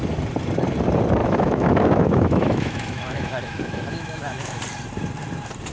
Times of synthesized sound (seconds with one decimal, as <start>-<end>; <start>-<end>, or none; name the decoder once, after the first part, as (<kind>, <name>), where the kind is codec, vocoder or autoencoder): 1.2-4.6 (autoencoder, DAC-VAE)